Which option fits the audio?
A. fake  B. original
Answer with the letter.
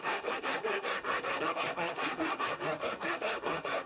A